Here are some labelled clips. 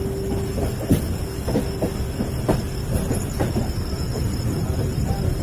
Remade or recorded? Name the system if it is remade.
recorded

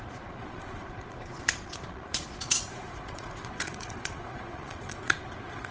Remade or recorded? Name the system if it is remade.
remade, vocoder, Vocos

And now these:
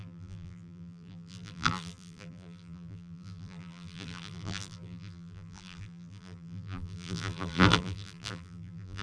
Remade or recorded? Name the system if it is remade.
remade, vocoder, BigVGAN v2